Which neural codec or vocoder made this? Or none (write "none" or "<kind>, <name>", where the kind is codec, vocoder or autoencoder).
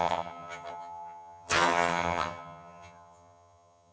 vocoder, HiFi-GAN